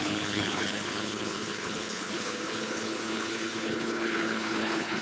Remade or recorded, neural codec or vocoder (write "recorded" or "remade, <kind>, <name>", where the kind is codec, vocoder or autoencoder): remade, codec, HILCodec